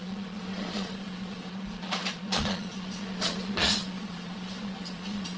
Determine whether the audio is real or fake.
fake